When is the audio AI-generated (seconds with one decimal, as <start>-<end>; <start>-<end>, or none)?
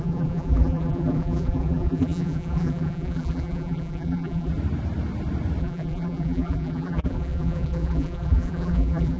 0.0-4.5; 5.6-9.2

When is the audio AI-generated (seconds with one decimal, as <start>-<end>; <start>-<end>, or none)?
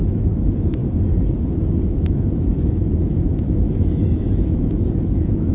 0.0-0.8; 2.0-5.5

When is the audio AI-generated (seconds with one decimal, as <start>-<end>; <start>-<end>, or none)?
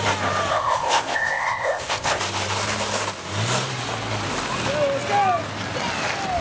0.5-2.2